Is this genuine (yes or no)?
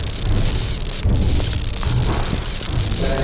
yes